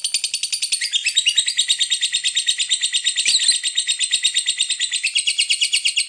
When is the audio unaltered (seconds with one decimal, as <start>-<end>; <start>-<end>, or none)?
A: 0.0-6.1